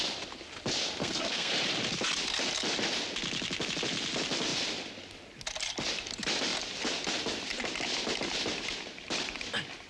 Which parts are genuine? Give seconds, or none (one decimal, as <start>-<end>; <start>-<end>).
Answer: 0.0-1.0; 1.5-9.9